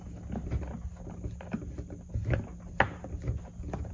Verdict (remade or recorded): recorded